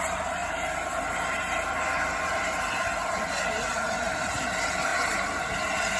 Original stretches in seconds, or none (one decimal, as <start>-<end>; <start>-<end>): 0.0-6.0